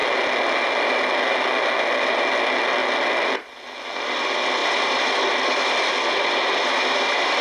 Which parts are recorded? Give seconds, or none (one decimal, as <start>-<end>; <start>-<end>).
0.0-7.4